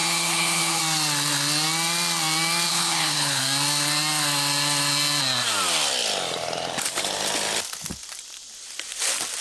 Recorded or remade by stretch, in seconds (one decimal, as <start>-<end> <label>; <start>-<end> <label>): 0.0-0.8 remade; 0.8-2.7 recorded; 2.7-3.4 remade; 3.4-9.4 recorded